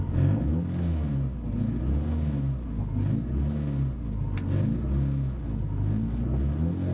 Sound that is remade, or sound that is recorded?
recorded